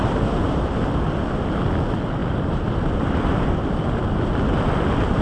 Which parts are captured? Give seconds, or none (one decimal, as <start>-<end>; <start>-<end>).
0.0-2.2; 4.4-5.2